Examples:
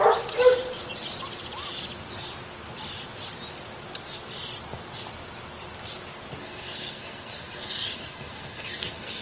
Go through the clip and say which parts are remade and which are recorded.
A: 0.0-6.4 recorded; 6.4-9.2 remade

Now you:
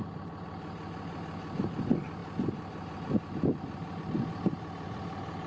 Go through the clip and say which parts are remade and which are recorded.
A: 0.0-5.5 recorded

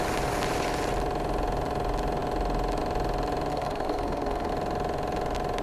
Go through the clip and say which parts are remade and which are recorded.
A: 0.0-3.5 recorded; 3.5-4.5 remade; 4.5-5.6 recorded